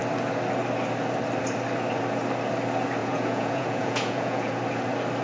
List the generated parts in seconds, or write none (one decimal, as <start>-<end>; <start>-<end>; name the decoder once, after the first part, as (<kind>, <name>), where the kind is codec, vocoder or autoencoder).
3.0-4.5 (vocoder, Vocos)